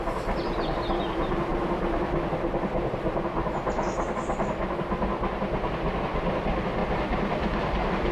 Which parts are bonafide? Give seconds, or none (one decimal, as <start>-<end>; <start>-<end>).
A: 0.0-6.8